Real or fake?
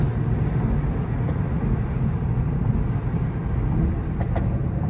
real